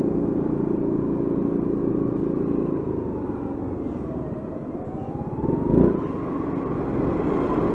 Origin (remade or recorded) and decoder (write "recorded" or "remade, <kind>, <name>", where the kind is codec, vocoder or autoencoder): recorded